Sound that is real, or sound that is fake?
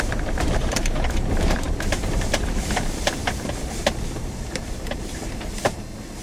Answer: fake